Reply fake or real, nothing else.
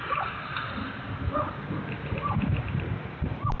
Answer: fake